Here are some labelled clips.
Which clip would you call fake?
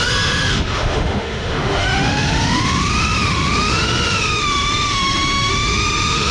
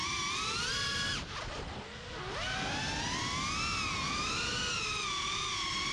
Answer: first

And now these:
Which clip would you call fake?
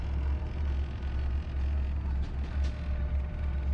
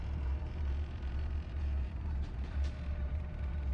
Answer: second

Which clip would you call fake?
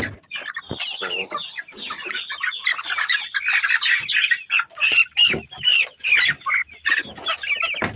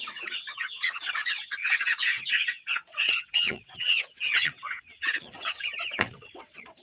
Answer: second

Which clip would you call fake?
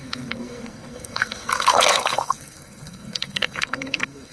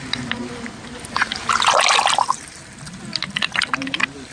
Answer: first